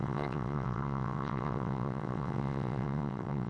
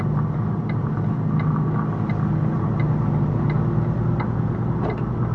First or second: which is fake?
first